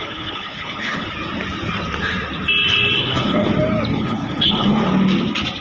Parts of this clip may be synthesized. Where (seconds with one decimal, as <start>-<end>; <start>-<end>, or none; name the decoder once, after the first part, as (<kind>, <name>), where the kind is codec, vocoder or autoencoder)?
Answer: 0.0-1.1 (codec, HILCodec); 3.0-3.5; 3.9-4.7